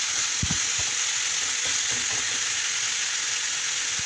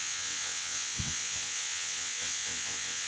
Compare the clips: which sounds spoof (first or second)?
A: second